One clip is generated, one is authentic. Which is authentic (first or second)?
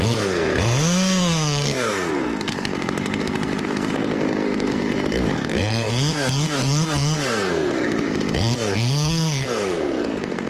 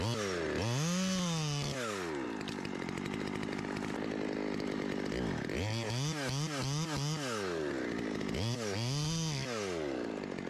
second